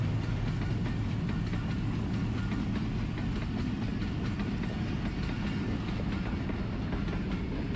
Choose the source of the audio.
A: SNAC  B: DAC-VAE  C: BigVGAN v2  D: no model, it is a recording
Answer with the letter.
D